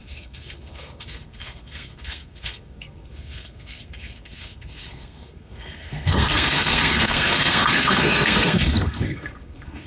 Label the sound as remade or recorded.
remade